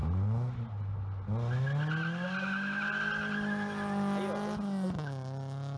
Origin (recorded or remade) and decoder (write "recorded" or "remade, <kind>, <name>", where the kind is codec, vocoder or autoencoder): recorded